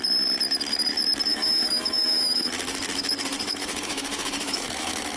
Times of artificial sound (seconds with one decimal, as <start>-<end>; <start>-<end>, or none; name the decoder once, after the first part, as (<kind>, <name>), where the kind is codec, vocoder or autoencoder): 1.3-2.5 (autoencoder, DAC-VAE); 3.5-5.2